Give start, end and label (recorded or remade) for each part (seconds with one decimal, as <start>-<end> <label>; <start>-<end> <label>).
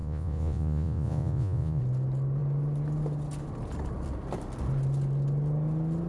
0.0-1.8 remade; 1.8-6.1 recorded